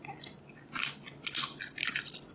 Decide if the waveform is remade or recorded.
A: recorded